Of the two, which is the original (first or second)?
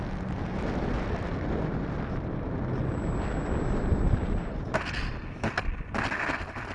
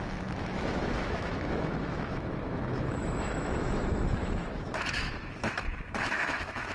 first